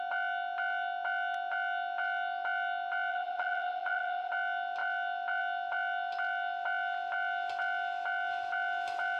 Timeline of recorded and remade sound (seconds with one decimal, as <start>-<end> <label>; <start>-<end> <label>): 0.0-3.1 recorded; 3.1-4.3 remade; 4.3-9.2 recorded